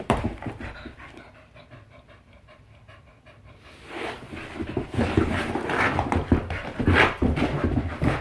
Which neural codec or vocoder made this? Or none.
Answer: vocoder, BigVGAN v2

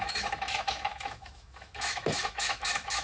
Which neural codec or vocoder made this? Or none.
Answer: autoencoder, DAC-VAE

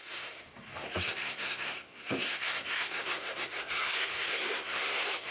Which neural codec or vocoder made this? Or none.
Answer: codec, SNAC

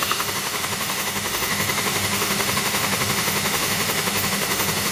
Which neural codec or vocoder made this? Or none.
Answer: autoencoder, DAC-VAE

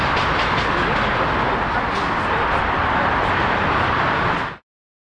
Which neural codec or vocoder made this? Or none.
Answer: none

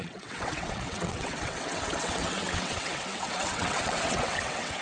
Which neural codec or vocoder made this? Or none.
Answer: vocoder, WaveNeXt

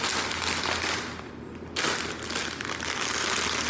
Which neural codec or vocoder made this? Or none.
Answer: none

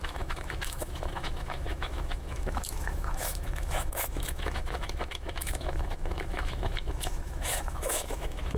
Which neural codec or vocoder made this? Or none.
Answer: autoencoder, DAC-VAE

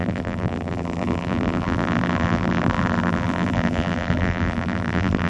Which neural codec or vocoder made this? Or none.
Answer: vocoder, BigVGAN v2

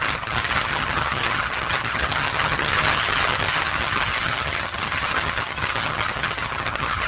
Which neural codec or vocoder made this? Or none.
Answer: vocoder, HiFi-GAN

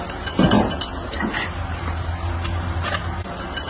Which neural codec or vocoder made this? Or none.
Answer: none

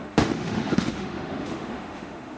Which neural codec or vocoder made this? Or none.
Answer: autoencoder, DAC-VAE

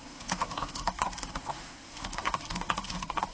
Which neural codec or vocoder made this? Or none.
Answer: codec, SNAC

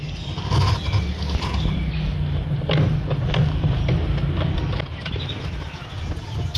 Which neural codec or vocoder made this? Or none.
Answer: none